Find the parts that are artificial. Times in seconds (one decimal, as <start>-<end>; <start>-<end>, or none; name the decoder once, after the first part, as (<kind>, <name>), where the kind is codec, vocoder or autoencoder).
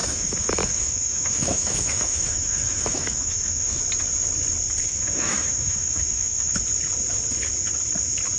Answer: 0.0-3.8 (autoencoder, DAC-VAE); 4.9-6.6